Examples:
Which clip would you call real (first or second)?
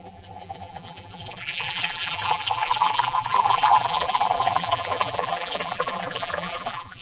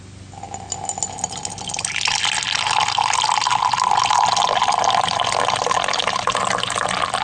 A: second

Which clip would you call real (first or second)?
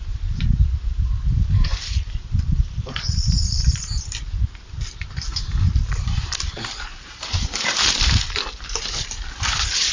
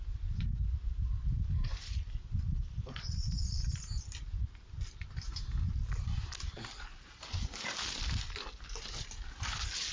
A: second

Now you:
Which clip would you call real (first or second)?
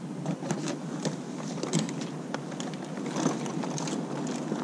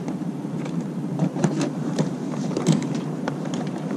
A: first